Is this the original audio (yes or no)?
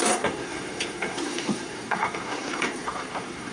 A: no